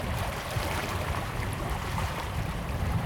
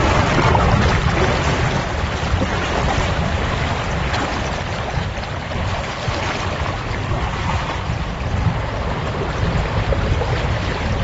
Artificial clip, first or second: first